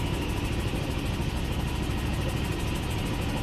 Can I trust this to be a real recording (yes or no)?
yes